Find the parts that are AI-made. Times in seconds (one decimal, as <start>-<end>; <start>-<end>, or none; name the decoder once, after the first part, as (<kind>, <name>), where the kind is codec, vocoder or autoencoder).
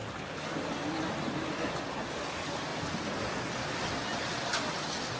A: none